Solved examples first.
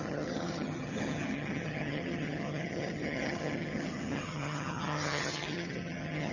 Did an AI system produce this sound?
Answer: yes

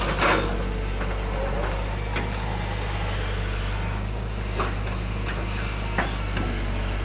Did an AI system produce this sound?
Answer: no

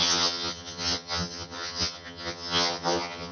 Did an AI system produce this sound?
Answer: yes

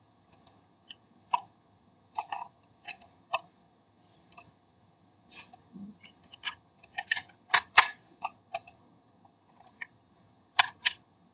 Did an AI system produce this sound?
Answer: yes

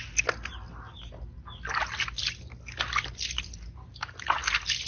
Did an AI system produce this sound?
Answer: no